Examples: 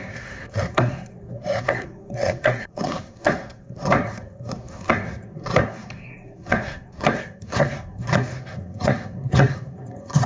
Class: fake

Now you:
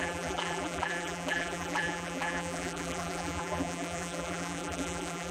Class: fake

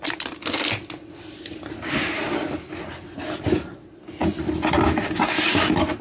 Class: real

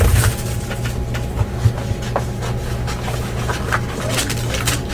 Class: real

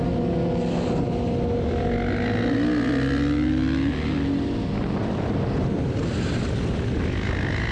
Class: real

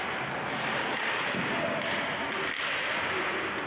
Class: real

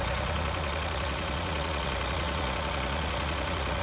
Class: fake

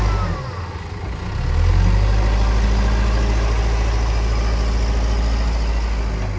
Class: real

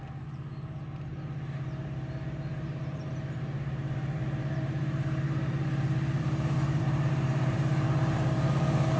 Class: fake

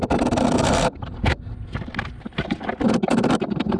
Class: real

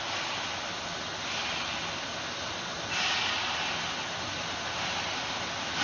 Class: real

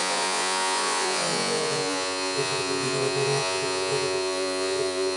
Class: fake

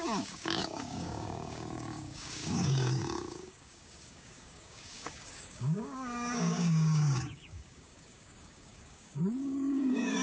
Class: fake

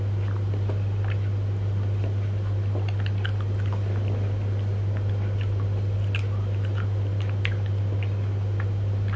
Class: real